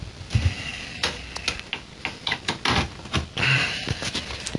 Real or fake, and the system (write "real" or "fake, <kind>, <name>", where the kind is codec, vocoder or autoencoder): real